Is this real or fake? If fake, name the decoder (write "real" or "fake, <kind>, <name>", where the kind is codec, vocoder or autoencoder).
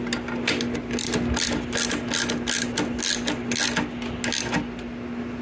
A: real